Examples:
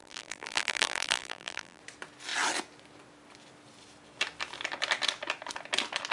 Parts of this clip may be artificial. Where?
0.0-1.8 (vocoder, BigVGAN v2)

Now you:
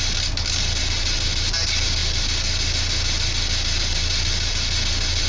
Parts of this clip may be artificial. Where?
none

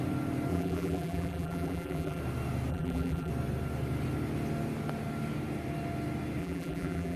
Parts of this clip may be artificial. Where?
0.5-2.2 (vocoder, BigVGAN v2); 2.7-3.3; 6.4-7.2

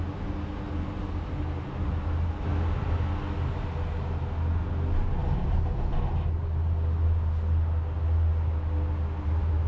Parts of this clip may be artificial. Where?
none

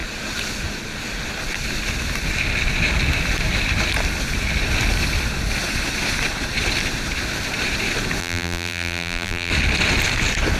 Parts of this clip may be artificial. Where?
8.2-9.5 (vocoder, BigVGAN v2)

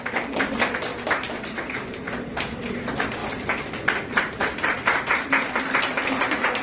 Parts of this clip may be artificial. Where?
3.2-5.6 (vocoder, BigVGAN v2)

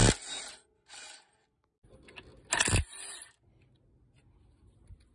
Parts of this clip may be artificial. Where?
none